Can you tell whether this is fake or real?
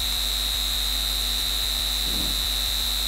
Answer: fake